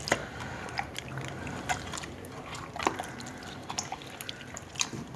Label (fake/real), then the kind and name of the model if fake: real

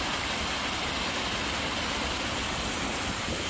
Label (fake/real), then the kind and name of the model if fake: real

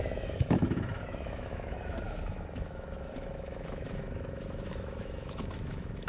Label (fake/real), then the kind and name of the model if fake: fake, autoencoder, DAC-VAE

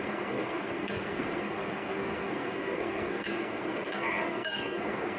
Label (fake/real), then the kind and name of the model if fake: fake, codec, SNAC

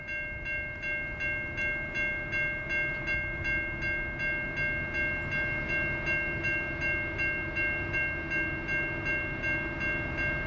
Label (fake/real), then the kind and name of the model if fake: real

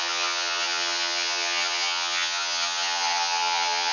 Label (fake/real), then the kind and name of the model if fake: fake, vocoder, HiFi-GAN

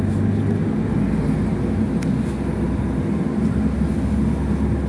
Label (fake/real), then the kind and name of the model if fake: real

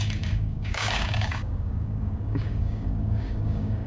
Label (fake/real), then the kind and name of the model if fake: fake, codec, DAC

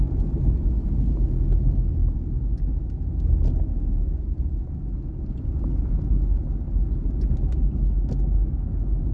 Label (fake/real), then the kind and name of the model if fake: real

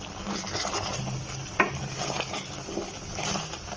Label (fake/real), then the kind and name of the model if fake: real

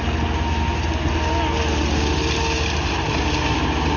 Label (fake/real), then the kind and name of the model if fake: real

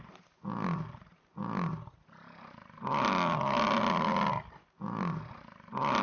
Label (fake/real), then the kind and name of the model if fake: real